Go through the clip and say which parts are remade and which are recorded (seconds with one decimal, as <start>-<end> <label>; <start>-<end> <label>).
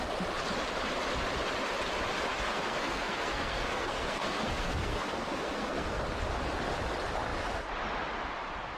0.0-2.3 recorded; 2.3-6.0 remade; 6.0-8.8 recorded